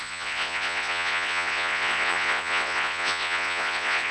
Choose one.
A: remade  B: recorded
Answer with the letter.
A